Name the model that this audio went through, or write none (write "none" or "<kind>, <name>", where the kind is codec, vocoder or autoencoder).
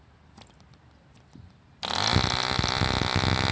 none